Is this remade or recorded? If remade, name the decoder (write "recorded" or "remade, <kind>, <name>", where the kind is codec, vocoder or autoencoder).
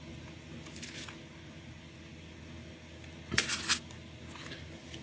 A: recorded